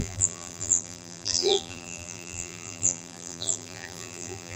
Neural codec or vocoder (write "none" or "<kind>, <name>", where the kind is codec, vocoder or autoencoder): vocoder, BigVGAN v2